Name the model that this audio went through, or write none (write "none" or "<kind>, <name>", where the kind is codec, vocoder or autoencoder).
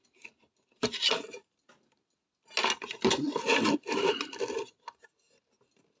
none